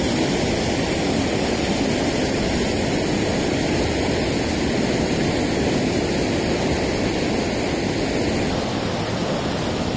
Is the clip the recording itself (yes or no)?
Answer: yes